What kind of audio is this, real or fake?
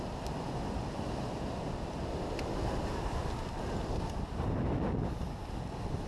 real